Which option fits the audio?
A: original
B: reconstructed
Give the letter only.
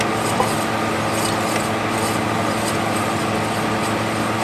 A